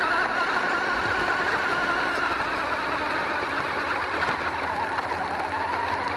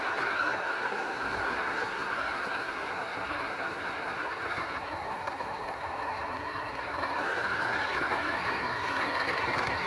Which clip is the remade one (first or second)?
second